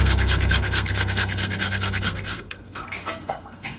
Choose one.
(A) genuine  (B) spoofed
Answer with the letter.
B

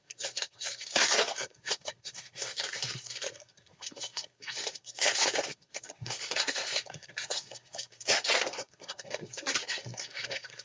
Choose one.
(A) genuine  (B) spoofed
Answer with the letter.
B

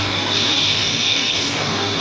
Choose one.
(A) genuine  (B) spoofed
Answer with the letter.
B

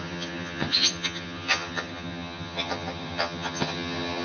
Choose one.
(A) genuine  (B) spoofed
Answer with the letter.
B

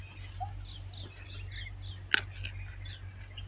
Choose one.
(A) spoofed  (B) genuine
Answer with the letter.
B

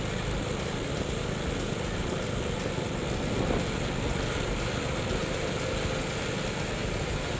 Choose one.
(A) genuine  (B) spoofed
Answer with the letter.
A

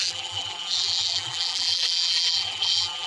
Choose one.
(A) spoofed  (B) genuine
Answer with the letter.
A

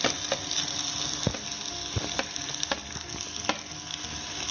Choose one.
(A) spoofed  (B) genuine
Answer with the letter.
B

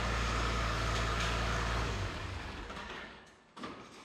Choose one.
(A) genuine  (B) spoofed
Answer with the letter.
B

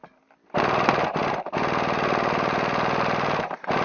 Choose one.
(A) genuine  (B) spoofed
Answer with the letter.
A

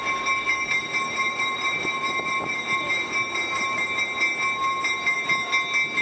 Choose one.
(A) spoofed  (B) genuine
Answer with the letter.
B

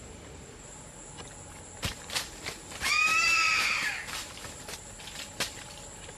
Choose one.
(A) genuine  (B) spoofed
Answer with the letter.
A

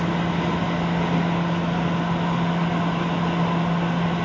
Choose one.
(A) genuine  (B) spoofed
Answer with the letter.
A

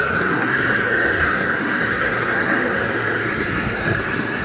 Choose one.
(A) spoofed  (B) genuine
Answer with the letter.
A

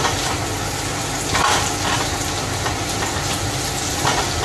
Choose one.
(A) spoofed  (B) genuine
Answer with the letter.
B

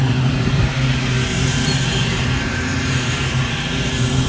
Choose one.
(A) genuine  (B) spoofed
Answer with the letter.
B